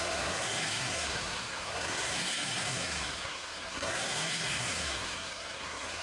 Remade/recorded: remade